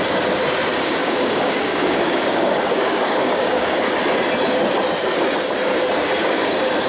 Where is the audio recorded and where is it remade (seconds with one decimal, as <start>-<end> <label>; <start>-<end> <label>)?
0.0-1.0 recorded; 1.0-3.9 remade; 3.9-6.2 recorded; 6.2-6.9 remade